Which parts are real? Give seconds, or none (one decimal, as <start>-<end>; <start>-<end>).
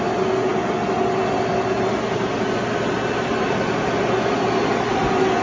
0.0-5.4